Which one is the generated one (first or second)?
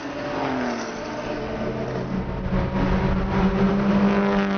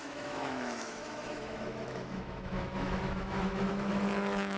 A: second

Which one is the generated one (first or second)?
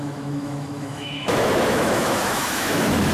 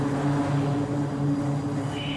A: first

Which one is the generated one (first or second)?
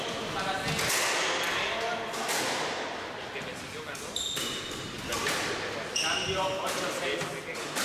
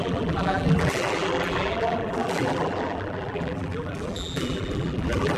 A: second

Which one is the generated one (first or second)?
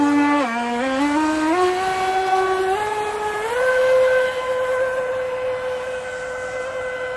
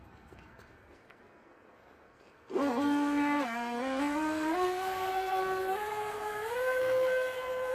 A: second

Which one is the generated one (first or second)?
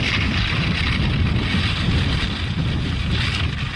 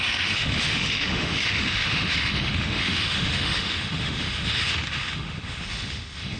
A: second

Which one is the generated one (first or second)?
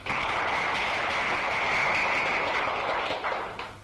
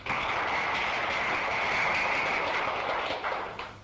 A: second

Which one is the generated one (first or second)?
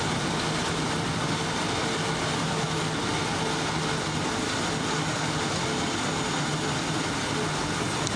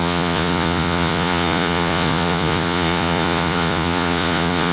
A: second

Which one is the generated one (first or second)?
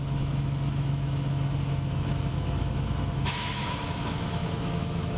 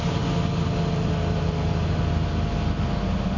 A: first